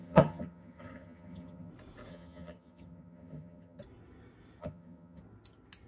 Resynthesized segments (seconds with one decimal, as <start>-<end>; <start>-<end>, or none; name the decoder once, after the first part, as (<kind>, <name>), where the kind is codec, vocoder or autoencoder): 0.0-1.7 (vocoder, HiFi-GAN); 2.1-3.8; 4.6-5.2

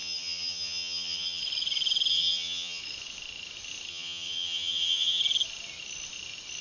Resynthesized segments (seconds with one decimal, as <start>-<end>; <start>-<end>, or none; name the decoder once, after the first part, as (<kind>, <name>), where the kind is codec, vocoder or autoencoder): 0.0-1.4 (vocoder, HiFi-GAN); 2.1-2.8; 3.9-5.2

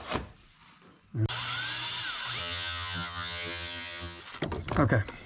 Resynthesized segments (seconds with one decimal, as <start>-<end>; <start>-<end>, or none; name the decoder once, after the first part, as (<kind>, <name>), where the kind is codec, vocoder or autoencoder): 2.4-4.2 (vocoder, HiFi-GAN)

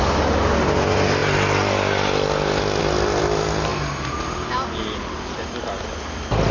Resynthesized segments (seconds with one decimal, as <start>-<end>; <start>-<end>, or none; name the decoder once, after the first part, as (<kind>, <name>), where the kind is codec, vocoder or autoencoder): none